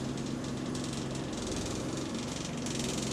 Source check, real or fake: fake